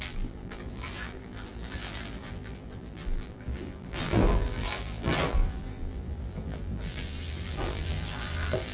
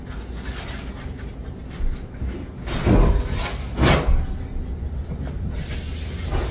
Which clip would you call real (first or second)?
second